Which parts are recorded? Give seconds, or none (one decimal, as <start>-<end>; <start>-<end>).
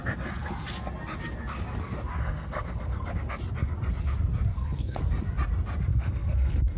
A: 0.0-2.2; 3.1-4.5; 5.0-5.9